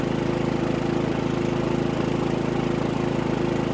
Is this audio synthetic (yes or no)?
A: no